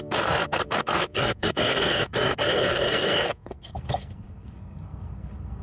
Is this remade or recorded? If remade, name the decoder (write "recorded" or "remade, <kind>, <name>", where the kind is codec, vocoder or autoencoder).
remade, codec, SNAC